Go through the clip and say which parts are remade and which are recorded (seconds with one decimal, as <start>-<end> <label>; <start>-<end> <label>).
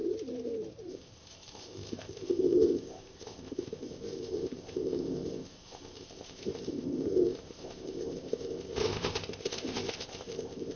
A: 0.0-0.9 recorded; 0.9-10.8 remade